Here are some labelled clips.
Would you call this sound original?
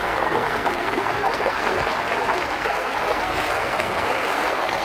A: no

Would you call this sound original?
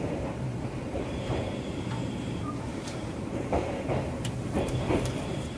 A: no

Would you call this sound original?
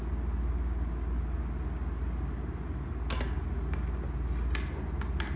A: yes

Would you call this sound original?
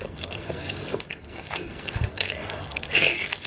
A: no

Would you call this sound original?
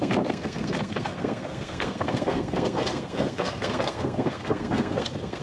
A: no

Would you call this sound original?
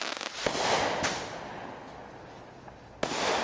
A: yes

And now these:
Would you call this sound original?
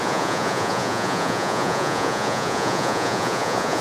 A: no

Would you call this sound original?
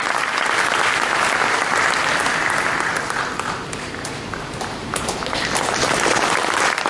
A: no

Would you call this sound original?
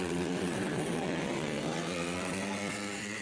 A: no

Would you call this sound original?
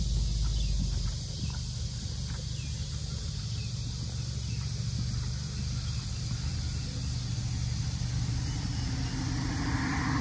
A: yes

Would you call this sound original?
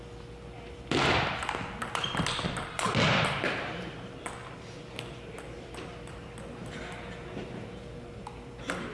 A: yes